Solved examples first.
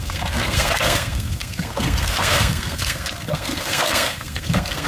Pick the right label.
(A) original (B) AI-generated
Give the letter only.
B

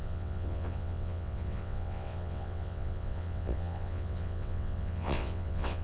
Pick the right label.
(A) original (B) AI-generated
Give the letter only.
B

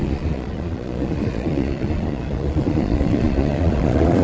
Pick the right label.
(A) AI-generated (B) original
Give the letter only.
A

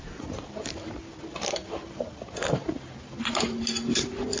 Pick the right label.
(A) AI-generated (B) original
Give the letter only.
B